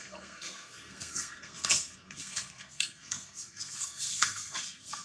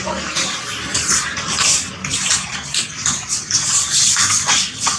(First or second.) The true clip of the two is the second